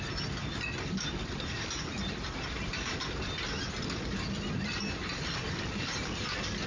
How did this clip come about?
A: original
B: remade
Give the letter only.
A